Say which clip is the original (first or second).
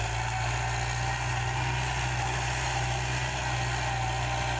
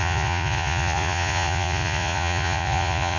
first